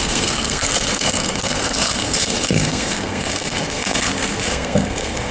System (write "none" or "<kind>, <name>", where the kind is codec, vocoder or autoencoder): codec, SNAC